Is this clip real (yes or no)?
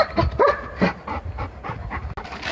yes